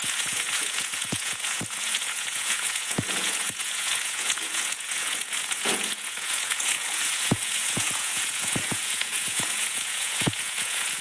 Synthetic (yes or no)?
yes